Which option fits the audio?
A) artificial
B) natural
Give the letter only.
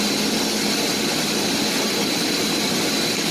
B